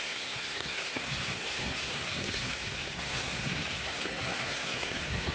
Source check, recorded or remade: remade